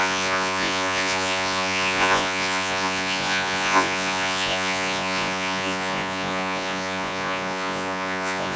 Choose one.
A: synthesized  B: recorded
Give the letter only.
A